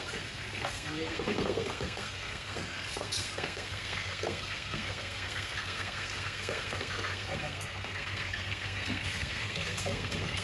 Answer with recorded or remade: remade